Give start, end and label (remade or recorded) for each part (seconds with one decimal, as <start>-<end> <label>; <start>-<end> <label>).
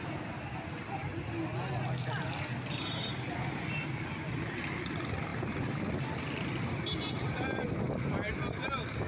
0.0-1.0 recorded; 1.0-1.8 remade; 1.8-5.3 recorded; 5.3-7.7 remade; 7.7-9.1 recorded